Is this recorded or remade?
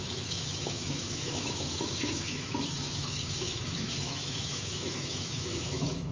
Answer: remade